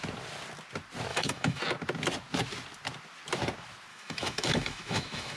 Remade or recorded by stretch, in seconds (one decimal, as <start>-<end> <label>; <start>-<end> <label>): 0.0-1.1 recorded; 1.1-1.6 remade; 1.6-3.9 recorded; 3.9-5.4 remade